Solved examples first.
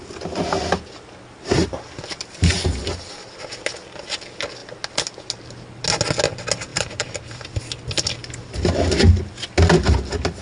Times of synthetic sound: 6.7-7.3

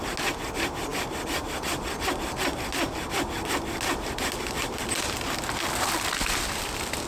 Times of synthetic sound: none

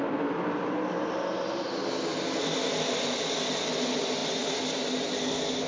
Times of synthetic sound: 4.2-4.8